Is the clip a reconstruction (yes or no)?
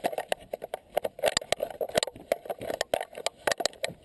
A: no